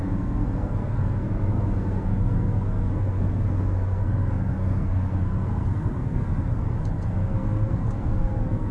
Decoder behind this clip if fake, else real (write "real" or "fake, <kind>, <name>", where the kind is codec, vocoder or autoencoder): fake, codec, SNAC